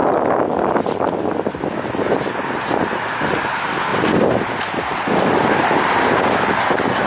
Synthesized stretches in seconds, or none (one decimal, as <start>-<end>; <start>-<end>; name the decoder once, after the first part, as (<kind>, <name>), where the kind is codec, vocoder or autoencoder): none